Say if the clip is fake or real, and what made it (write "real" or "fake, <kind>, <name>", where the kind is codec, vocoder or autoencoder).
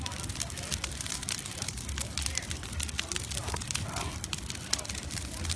fake, vocoder, BigVGAN v2